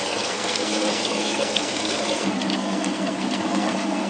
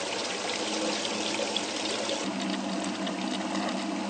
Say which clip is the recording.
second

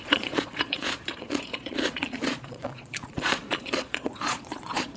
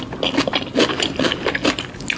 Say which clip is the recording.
second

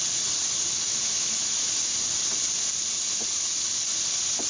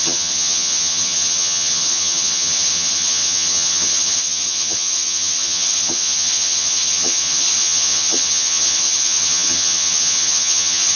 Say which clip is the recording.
first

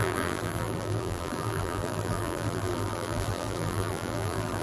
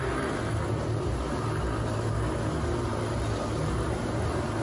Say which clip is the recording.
second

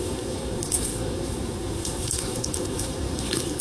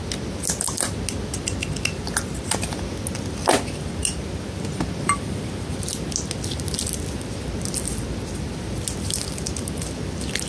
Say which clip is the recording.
second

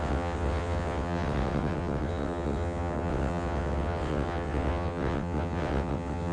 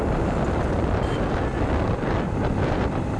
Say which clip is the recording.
second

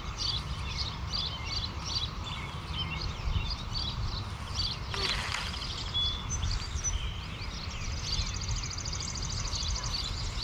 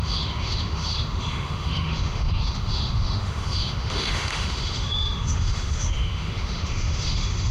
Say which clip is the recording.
first